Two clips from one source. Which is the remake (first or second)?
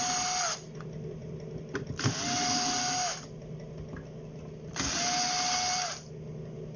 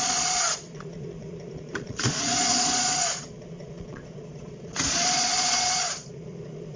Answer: second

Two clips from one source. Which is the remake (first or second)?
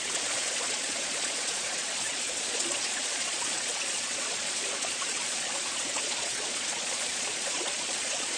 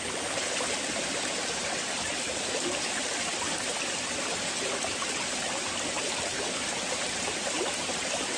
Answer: first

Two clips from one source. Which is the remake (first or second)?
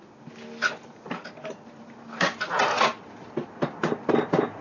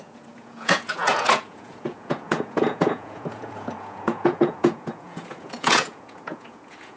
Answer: second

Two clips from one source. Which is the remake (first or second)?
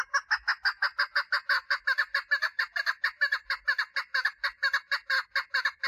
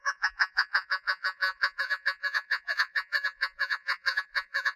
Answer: second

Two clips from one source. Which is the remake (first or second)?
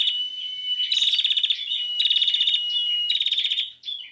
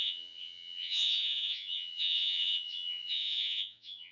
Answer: second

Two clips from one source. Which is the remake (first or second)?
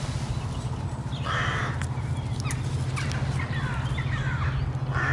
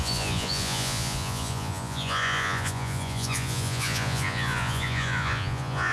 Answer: second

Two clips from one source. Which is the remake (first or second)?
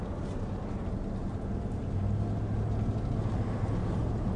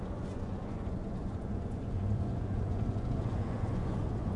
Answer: second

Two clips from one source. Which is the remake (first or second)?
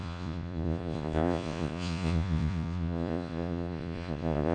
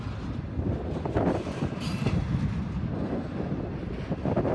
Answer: first